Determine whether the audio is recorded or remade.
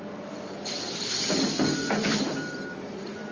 remade